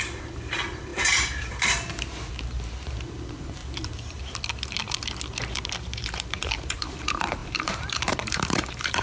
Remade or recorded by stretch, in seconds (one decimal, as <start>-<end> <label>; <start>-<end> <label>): 0.0-3.6 remade; 3.6-5.8 recorded; 5.8-9.0 remade